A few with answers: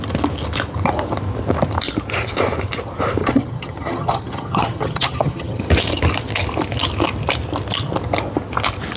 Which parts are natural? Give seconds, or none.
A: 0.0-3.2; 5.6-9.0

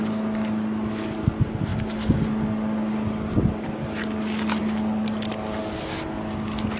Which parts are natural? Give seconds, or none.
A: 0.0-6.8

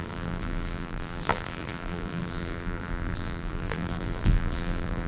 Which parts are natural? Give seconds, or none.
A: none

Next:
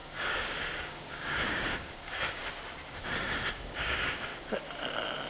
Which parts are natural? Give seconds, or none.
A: 2.4-3.5; 4.3-5.3